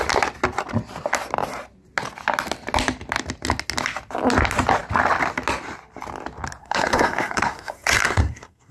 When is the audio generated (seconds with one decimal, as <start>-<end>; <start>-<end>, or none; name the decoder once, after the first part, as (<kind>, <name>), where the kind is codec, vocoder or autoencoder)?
6.6-8.7 (codec, SNAC)